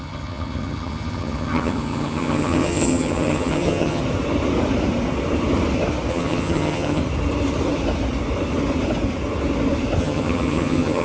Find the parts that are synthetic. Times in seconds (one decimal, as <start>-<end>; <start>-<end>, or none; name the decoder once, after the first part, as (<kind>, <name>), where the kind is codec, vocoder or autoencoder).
0.0-4.0 (vocoder, HiFi-GAN); 6.1-7.0; 10.0-11.0